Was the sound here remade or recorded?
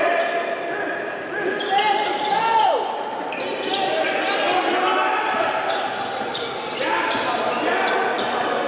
recorded